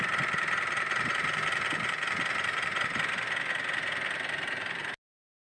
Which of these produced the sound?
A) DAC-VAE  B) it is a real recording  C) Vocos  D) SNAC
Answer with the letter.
B